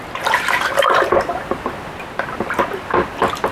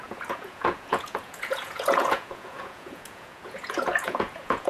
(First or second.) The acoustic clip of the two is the first